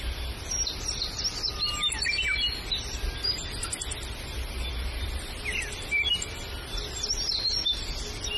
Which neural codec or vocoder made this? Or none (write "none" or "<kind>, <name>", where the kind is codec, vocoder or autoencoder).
none